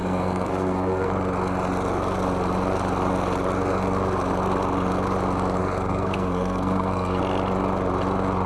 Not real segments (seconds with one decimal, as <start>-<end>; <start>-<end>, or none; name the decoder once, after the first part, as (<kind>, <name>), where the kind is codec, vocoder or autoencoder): 0.0-1.1 (codec, SNAC); 5.6-7.2